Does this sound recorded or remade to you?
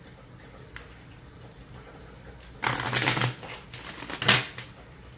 recorded